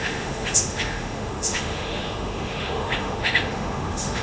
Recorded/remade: remade